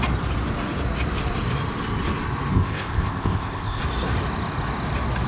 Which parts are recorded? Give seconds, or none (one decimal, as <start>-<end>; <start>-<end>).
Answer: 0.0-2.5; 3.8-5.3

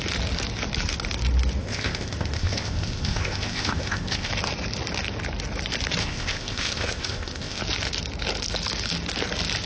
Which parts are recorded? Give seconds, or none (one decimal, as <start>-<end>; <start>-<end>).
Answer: 0.0-1.6; 4.3-6.0; 7.6-9.7

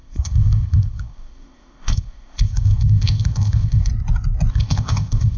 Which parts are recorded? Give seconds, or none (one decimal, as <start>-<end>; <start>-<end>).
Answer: 3.9-4.5

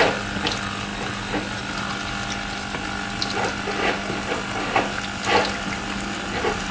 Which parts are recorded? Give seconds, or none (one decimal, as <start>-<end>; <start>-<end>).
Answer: 0.0-6.7

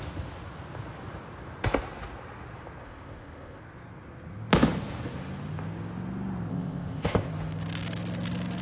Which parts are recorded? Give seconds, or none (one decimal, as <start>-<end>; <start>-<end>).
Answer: 0.0-2.8; 3.6-6.5; 7.3-8.6